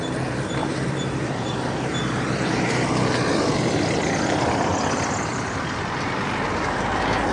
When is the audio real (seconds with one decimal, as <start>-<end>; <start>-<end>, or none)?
0.0-0.6; 2.7-7.3